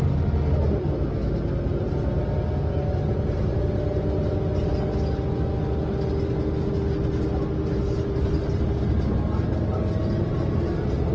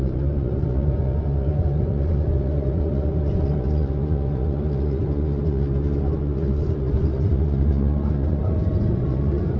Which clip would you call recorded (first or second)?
first